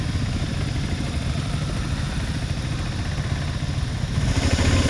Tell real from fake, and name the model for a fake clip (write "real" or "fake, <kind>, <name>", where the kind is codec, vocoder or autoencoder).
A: real